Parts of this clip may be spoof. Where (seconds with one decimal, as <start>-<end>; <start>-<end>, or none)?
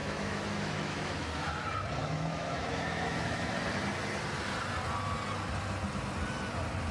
0.0-1.3; 2.0-3.5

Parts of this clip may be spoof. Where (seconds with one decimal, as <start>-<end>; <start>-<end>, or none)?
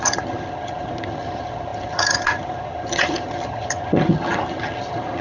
0.0-5.2